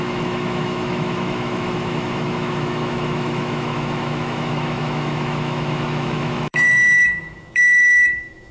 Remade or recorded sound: remade